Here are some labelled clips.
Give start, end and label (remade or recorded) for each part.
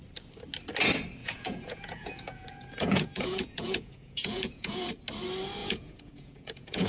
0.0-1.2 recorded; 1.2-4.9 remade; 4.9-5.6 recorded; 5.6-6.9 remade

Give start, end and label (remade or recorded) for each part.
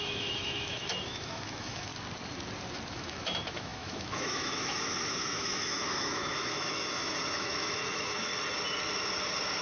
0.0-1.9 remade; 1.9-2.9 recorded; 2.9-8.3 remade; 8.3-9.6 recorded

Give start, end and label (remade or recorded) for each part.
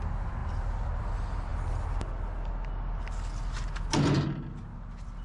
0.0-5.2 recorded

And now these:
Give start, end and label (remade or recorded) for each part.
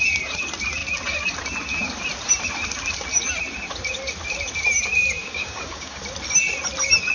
0.0-5.2 recorded; 5.2-6.0 remade; 6.0-7.1 recorded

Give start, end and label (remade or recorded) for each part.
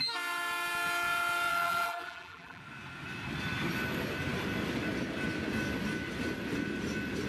0.0-1.5 recorded; 1.5-2.6 remade; 2.6-7.3 recorded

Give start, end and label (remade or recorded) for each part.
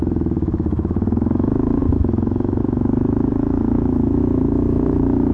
0.0-5.3 remade